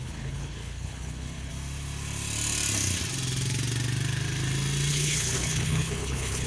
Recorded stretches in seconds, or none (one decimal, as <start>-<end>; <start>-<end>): 1.5-4.9